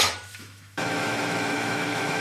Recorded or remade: remade